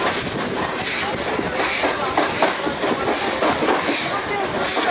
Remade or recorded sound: recorded